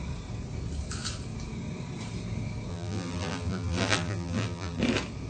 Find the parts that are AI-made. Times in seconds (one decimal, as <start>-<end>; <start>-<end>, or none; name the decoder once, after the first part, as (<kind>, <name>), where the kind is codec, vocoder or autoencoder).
2.7-4.8 (vocoder, BigVGAN v2)